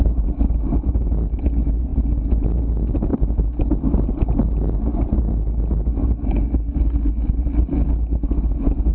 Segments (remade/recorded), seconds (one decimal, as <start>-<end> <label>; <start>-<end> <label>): 0.0-8.9 recorded